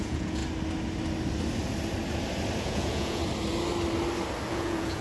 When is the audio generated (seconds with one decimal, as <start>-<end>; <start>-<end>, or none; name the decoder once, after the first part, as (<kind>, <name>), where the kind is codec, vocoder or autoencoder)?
0.0-0.4 (vocoder, Vocos); 2.6-3.2; 4.5-5.0